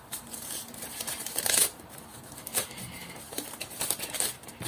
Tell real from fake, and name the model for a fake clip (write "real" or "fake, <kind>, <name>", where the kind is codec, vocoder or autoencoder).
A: fake, vocoder, BigVGAN v2